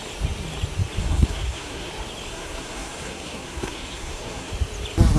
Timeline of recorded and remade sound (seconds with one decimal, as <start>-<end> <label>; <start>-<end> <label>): 0.0-1.0 recorded; 1.0-1.9 remade; 1.9-2.3 recorded; 2.3-4.5 remade; 4.5-5.2 recorded